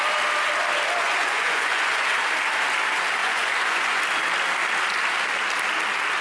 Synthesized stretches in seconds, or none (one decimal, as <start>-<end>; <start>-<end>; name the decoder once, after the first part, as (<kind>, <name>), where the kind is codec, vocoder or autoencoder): 1.0-2.1 (vocoder, Vocos); 3.2-4.0